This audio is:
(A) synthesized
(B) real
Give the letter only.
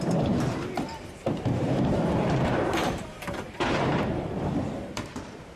A